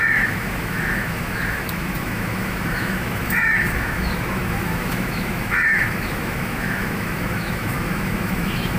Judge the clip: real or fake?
fake